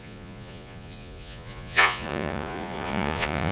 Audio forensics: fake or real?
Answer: fake